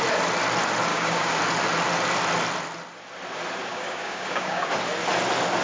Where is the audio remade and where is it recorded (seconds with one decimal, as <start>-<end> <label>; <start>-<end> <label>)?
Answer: 0.0-0.9 recorded; 0.9-1.4 remade; 1.4-3.7 recorded; 3.7-4.6 remade; 4.6-5.6 recorded